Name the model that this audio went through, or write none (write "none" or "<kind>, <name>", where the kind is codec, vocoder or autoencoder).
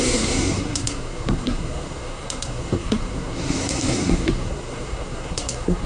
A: codec, SNAC